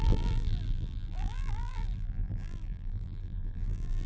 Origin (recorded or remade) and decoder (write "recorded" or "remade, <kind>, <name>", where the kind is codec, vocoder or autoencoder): remade, vocoder, BigVGAN v2